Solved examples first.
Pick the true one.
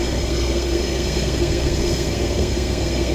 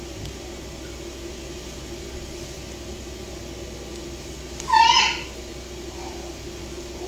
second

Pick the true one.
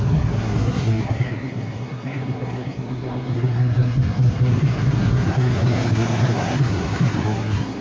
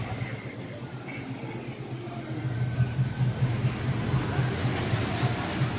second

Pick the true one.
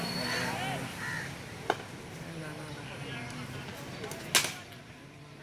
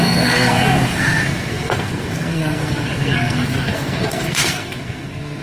first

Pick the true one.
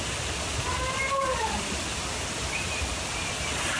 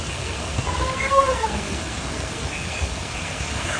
first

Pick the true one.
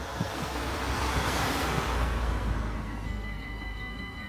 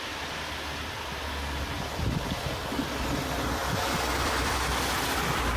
second